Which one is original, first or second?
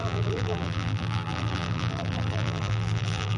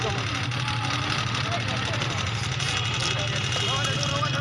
second